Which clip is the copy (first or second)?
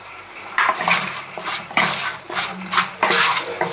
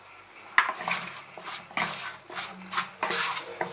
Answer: first